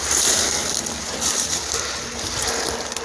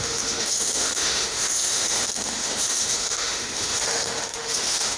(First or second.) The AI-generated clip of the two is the second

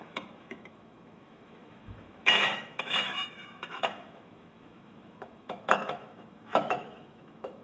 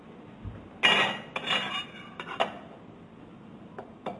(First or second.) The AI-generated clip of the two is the first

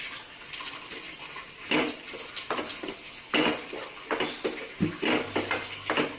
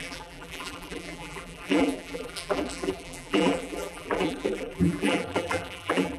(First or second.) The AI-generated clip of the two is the second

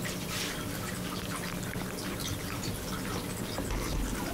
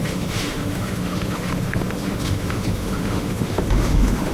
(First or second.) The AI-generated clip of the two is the second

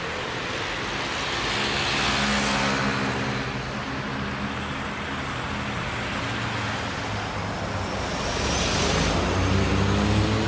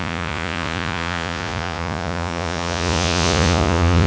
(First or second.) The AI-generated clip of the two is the second